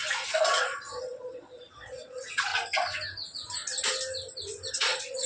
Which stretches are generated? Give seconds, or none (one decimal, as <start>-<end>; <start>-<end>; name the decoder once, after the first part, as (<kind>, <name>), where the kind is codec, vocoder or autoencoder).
0.6-2.5 (vocoder, Vocos); 4.7-5.3